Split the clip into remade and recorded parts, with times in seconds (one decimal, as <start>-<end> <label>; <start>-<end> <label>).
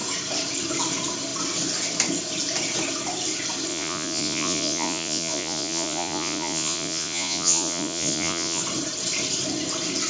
0.0-3.7 recorded; 3.7-8.6 remade; 8.6-10.1 recorded